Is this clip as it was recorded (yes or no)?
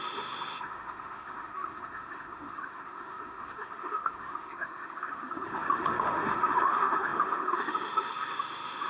no